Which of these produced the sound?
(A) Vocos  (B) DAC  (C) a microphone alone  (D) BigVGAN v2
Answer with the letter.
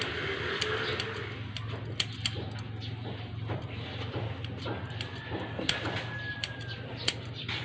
C